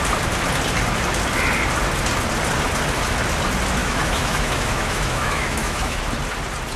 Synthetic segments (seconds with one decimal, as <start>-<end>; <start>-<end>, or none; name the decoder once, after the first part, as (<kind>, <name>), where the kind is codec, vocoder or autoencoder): 3.8-6.0 (autoencoder, DAC-VAE)